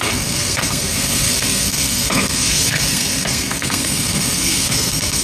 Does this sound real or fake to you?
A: fake